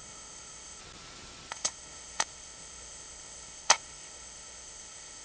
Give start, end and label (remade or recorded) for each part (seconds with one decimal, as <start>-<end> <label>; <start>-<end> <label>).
0.0-0.8 remade; 0.8-1.5 recorded; 1.5-5.2 remade